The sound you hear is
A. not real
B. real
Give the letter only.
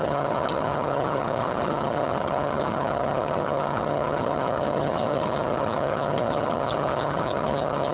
A